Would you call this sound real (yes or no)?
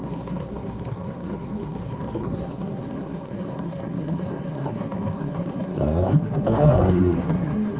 no